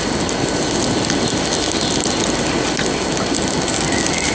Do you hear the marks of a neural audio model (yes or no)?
no